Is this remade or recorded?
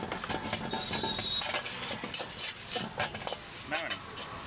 recorded